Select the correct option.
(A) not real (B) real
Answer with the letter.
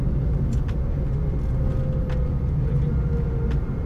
B